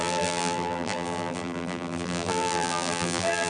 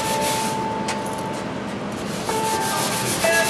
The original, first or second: second